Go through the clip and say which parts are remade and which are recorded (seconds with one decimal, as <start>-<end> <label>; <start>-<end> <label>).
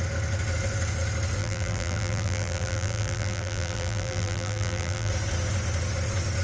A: 0.0-1.4 recorded; 1.4-5.1 remade; 5.1-6.4 recorded